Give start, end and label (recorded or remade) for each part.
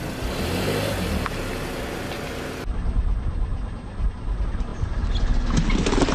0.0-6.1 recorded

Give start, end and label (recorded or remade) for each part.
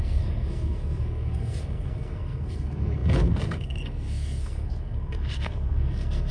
0.0-6.3 remade